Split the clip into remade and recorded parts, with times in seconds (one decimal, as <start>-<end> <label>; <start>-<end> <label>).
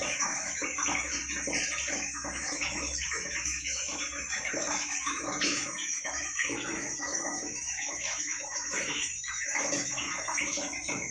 0.0-1.2 remade; 1.2-1.9 recorded; 1.9-11.1 remade